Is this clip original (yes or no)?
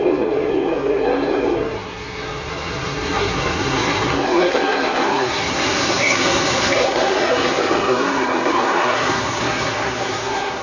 no